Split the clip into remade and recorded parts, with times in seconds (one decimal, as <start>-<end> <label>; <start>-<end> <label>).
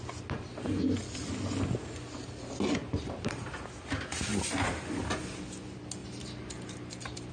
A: 0.0-2.8 recorded; 2.8-3.6 remade; 3.6-4.3 recorded; 4.3-5.4 remade; 5.4-6.0 recorded; 6.0-7.3 remade